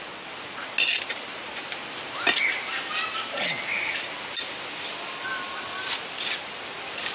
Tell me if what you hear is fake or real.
real